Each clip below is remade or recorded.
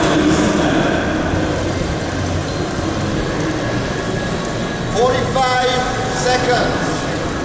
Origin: recorded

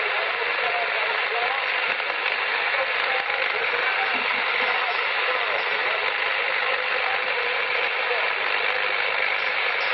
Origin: recorded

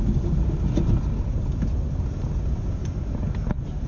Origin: recorded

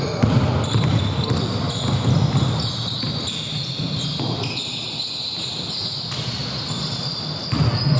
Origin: recorded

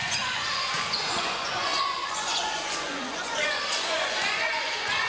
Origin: remade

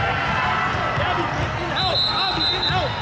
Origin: recorded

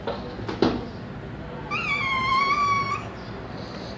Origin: recorded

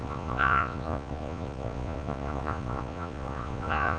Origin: remade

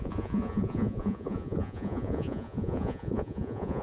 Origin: remade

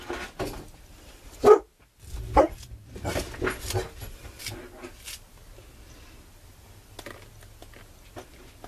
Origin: recorded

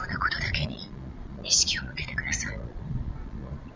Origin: remade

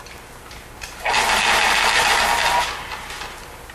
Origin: recorded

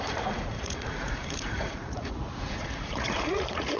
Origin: remade